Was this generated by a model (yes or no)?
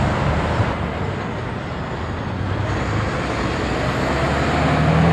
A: no